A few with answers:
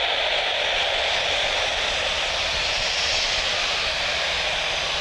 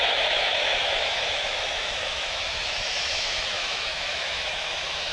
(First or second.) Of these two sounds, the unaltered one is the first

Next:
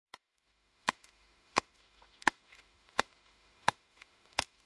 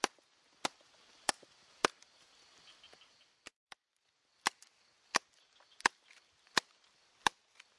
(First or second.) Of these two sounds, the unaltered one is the second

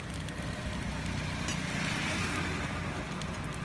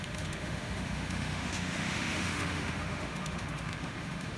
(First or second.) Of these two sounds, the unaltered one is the first